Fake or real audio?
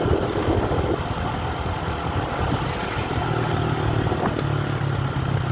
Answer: real